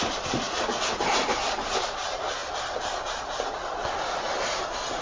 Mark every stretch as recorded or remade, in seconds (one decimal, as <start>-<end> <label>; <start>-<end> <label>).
0.0-5.0 recorded